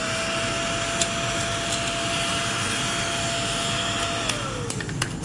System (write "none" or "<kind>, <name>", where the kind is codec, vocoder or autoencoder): none